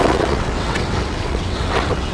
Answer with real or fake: fake